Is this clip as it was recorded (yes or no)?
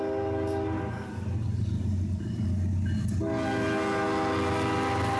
yes